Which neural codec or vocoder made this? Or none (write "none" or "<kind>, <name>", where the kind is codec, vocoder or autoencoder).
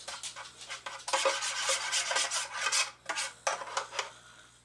none